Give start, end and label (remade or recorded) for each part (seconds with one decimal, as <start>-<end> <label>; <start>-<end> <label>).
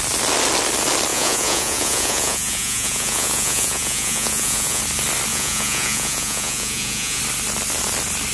0.0-1.1 recorded; 1.1-4.8 remade; 4.8-5.3 recorded; 5.3-7.2 remade; 7.2-8.3 recorded